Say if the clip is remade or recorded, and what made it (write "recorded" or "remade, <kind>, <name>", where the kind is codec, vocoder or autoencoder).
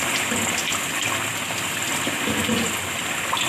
recorded